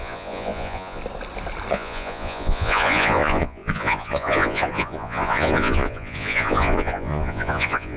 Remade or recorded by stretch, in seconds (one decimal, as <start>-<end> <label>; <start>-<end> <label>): 0.0-1.0 remade; 1.0-1.7 recorded; 1.7-8.0 remade